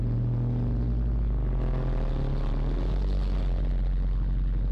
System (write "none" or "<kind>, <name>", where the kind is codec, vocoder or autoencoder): none